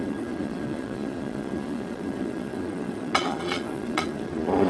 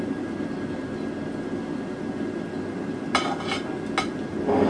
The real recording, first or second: second